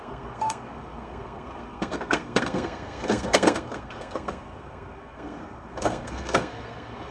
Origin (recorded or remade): remade